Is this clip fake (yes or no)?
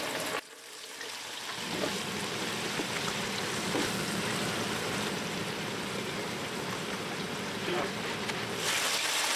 no